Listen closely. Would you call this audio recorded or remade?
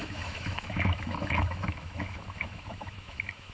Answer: remade